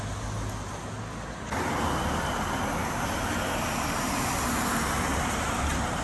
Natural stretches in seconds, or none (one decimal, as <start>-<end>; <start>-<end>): 0.0-2.8; 3.4-5.1